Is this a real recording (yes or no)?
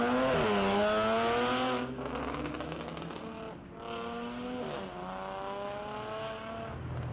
yes